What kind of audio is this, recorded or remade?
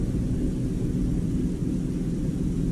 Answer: recorded